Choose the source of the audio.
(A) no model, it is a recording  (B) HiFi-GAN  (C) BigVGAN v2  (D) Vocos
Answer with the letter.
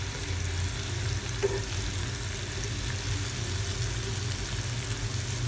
A